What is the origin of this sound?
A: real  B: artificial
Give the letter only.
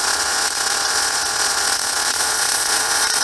B